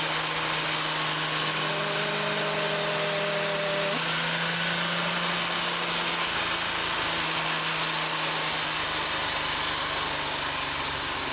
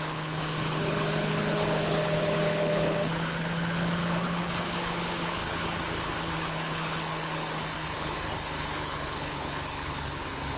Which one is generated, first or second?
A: second